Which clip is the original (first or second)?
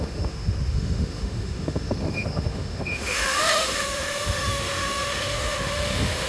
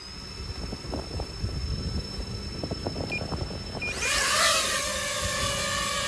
second